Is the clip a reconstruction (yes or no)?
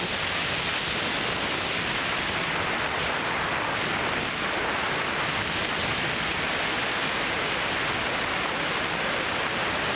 no